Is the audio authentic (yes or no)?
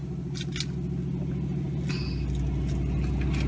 yes